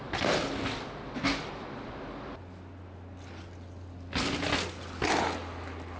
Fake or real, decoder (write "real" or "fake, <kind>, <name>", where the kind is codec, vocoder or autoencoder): real